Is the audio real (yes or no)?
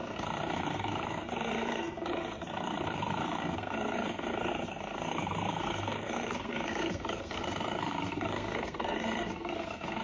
no